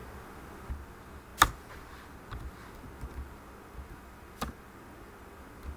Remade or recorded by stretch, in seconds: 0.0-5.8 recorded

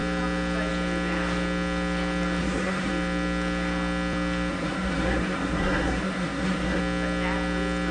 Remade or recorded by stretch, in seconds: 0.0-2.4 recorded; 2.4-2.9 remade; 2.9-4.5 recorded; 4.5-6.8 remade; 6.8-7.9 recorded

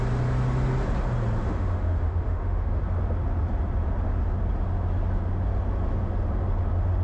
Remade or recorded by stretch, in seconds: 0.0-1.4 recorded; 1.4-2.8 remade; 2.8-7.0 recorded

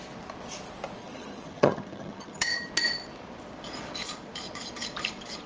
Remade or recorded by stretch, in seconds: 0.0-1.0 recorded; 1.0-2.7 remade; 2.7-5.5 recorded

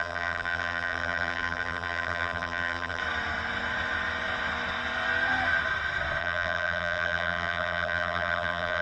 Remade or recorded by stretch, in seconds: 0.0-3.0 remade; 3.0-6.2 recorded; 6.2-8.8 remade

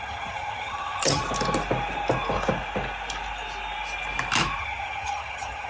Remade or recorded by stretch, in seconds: 0.0-1.2 remade; 1.2-4.6 recorded; 4.6-5.7 remade